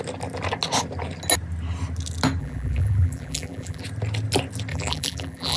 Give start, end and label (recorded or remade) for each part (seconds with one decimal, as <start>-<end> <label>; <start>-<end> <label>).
0.0-2.4 recorded; 2.4-3.8 remade; 3.8-4.7 recorded; 4.7-5.6 remade